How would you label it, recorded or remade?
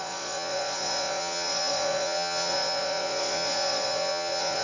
remade